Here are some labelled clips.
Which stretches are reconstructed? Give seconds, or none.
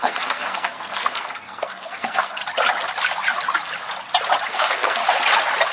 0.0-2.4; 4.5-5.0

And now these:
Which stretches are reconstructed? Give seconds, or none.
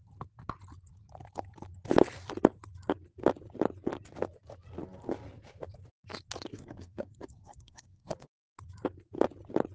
6.5-8.1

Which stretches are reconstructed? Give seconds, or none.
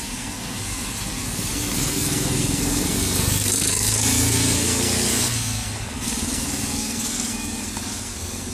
0.0-8.5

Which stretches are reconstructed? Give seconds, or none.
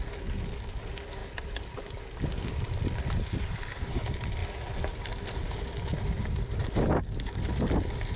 none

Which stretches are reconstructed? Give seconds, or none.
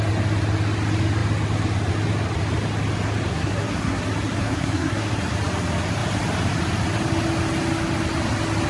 3.3-4.0; 4.4-5.1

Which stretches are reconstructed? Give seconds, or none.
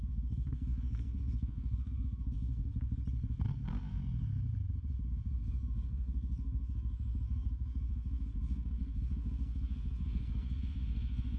0.0-2.7; 3.5-4.0; 5.1-11.4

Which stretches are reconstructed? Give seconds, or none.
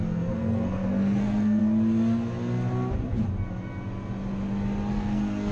0.0-1.6; 4.9-5.5